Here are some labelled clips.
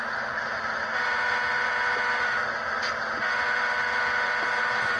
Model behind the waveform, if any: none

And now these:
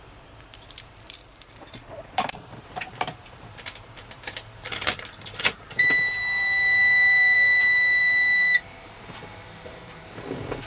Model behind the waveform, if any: vocoder, BigVGAN v2